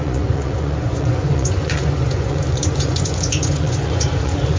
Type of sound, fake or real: fake